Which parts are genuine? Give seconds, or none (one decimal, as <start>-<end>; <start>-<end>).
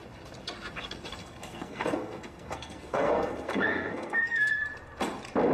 0.0-1.2; 4.5-5.5